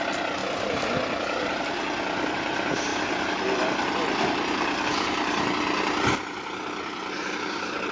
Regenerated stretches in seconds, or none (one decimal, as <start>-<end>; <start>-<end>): none